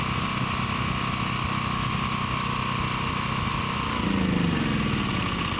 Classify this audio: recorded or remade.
recorded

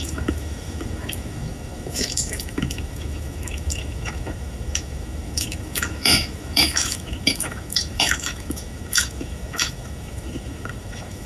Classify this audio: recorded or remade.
remade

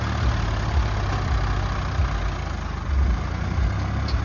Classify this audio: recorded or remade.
recorded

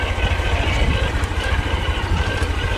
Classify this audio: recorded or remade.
remade